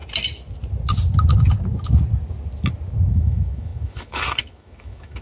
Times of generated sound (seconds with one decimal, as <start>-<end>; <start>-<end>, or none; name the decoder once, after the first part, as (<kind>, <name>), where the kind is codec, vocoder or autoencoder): 3.1-5.2 (autoencoder, DAC-VAE)